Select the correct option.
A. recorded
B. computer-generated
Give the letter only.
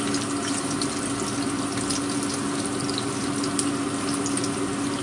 A